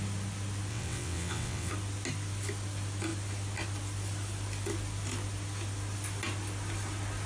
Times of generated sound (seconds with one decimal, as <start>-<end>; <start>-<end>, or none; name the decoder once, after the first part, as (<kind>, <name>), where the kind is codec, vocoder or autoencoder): 0.7-1.7 (vocoder, WaveNeXt)